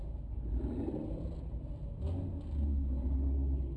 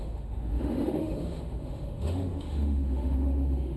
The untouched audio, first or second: first